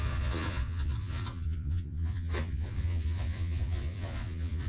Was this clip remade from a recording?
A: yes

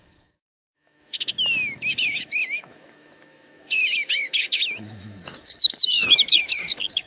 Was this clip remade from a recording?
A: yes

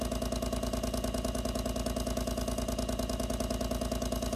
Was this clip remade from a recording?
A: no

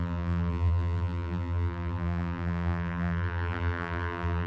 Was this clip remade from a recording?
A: yes